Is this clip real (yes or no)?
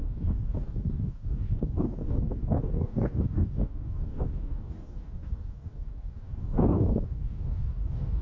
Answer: no